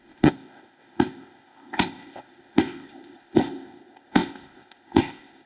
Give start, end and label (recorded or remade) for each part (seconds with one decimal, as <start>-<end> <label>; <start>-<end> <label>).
0.0-5.5 remade